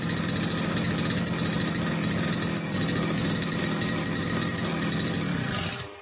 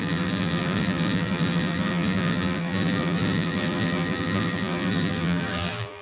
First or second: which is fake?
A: second